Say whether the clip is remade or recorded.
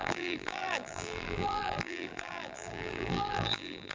remade